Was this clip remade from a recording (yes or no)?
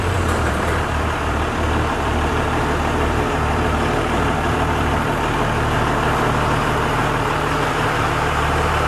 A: yes